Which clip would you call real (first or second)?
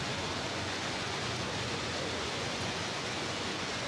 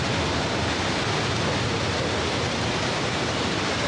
second